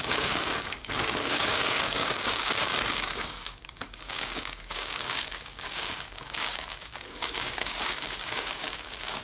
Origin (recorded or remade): remade